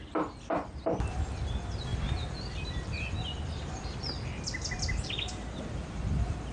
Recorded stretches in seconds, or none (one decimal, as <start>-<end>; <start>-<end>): 0.0-1.9; 5.1-6.5